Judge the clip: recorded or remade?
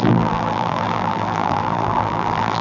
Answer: remade